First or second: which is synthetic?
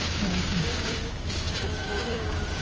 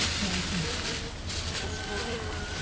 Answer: first